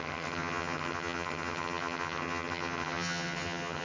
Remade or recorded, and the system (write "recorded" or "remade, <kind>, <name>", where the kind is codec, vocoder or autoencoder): remade, vocoder, HiFi-GAN